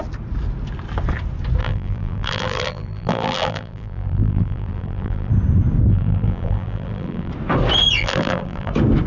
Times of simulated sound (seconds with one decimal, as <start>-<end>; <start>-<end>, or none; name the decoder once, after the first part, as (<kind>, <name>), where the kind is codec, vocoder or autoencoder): 1.6-5.3 (vocoder, BigVGAN v2); 5.9-7.3; 8.0-8.7